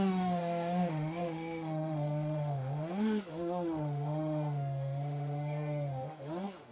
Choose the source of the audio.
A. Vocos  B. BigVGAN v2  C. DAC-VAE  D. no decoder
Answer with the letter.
C